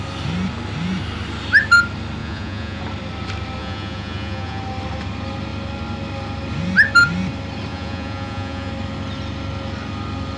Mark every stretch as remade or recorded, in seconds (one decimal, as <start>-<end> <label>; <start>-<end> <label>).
0.0-2.2 recorded; 2.2-2.8 remade; 2.8-3.6 recorded; 3.6-4.6 remade; 4.6-7.7 recorded; 7.7-8.7 remade; 8.7-10.4 recorded